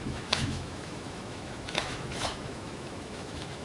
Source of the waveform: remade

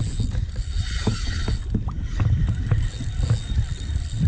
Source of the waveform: recorded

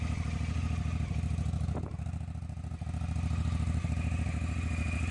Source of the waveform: recorded